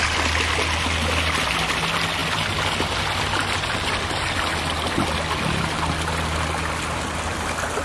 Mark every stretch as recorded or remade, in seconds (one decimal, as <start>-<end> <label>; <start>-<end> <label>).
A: 0.0-7.8 recorded